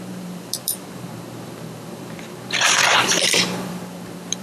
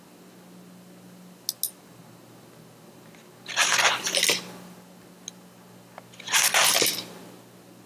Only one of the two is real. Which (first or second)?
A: second